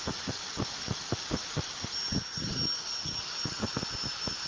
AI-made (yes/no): no